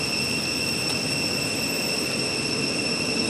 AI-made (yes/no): no